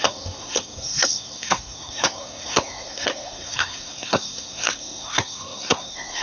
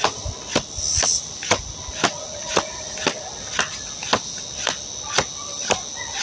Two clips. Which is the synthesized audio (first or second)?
first